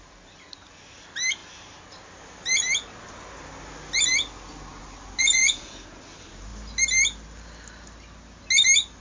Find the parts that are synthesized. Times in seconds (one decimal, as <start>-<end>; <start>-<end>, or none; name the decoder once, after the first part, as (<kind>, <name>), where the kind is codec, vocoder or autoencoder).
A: 5.2-5.7 (vocoder, Vocos)